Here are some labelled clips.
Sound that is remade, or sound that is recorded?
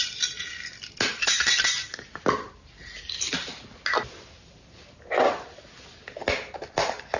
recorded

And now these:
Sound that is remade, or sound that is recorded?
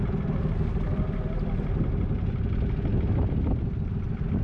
recorded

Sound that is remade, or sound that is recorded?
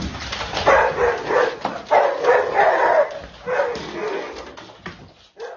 recorded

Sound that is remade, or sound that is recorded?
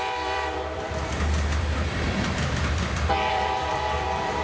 remade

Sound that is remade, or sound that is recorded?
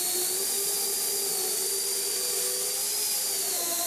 recorded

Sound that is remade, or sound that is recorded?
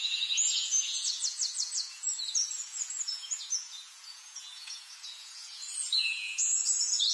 remade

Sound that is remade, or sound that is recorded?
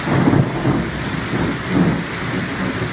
recorded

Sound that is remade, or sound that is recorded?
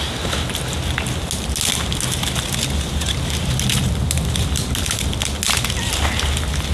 recorded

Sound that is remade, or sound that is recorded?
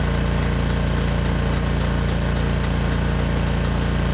recorded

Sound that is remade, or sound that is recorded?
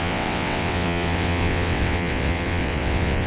remade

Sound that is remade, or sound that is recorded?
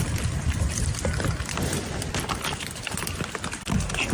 remade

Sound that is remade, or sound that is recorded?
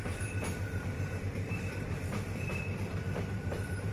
remade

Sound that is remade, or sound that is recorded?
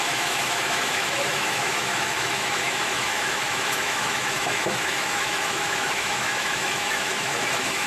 remade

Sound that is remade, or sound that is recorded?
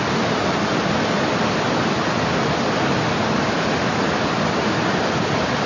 recorded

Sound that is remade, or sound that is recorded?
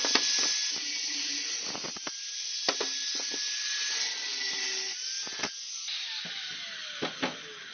recorded